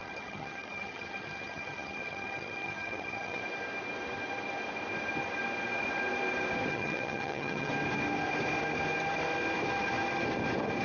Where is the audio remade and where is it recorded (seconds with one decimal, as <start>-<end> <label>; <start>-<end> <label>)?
0.0-3.4 remade; 3.4-6.7 recorded; 6.7-7.7 remade; 7.7-10.8 recorded